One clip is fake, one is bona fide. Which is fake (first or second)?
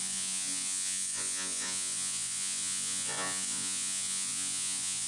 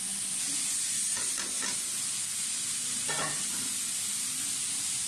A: first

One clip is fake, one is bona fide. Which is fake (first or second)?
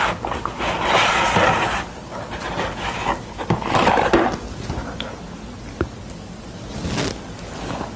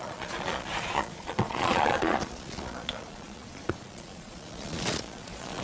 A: second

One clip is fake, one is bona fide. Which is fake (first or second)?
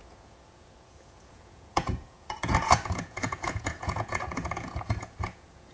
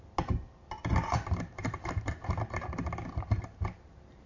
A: first